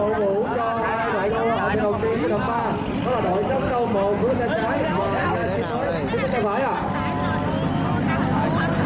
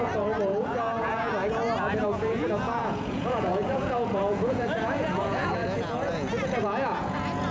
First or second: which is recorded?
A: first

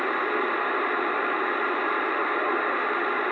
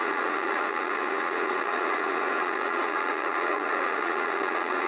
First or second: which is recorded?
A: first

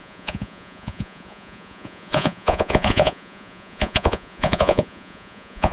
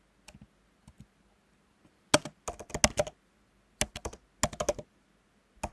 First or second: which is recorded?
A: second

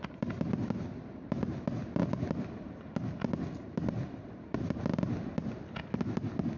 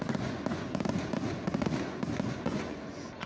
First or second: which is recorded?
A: first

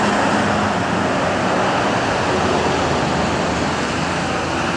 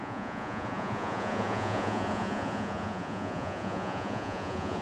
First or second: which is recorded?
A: first